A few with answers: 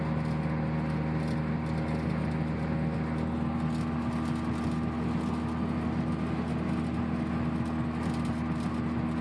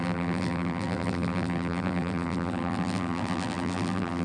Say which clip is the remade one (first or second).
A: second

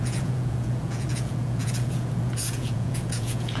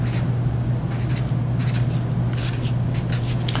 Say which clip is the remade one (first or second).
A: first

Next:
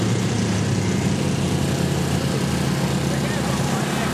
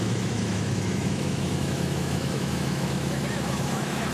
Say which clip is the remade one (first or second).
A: second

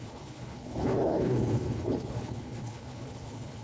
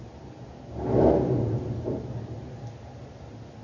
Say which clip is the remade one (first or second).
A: first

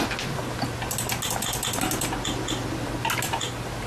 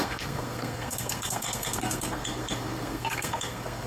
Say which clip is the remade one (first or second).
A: second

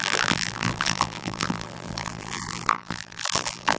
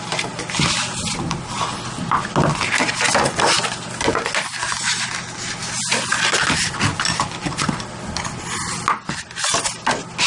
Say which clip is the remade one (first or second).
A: first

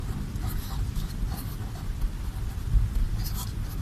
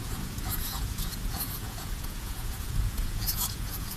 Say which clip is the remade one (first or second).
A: second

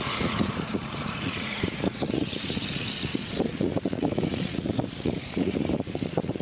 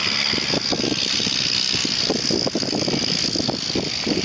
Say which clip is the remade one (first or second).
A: first